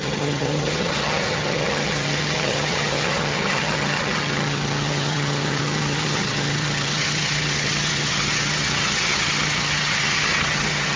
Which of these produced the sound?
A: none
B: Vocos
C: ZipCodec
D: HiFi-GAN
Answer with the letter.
D